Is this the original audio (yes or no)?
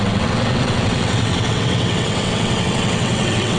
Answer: no